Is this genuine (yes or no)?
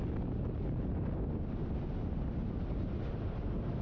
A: yes